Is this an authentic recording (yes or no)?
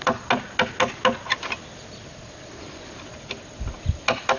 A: yes